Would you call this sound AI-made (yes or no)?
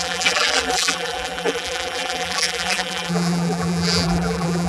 yes